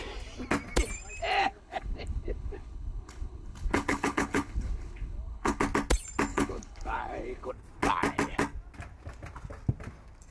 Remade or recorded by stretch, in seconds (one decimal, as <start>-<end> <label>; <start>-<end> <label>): 0.0-1.4 recorded; 1.4-5.6 remade; 5.6-6.3 recorded; 6.3-7.5 remade; 7.5-10.3 recorded